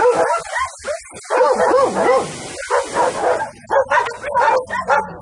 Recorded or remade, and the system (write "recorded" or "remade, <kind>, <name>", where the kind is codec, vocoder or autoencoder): recorded